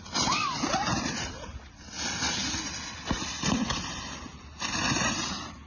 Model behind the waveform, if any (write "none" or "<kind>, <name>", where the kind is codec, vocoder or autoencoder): none